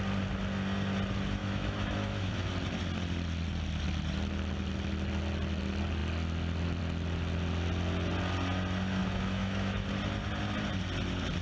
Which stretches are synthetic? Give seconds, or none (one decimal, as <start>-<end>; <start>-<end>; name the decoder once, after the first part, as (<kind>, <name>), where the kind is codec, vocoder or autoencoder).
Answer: 1.4-2.5 (autoencoder, DAC-VAE); 9.0-9.9